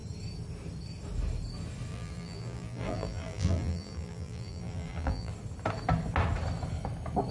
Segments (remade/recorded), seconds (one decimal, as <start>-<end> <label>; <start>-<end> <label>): 0.0-1.9 recorded; 1.9-5.3 remade; 5.3-7.3 recorded